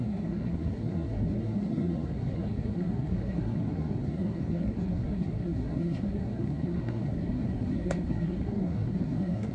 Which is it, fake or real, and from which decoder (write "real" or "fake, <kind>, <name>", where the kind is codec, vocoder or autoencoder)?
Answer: fake, codec, SNAC